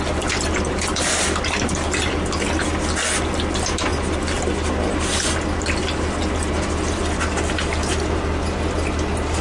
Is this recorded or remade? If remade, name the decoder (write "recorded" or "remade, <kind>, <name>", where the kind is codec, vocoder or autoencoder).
recorded